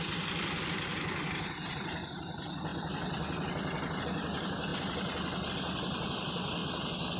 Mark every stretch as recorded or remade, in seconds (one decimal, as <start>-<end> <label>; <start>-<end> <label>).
0.0-4.7 remade; 4.7-5.5 recorded; 5.5-6.6 remade; 6.6-7.2 recorded